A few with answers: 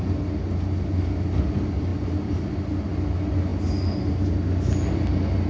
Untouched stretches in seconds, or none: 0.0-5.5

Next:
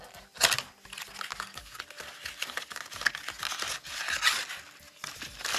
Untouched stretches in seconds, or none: 0.0-1.3; 1.8-5.6

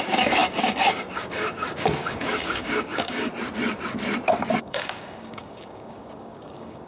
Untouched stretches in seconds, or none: 3.3-4.6